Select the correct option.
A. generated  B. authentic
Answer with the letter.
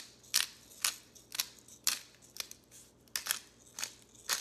B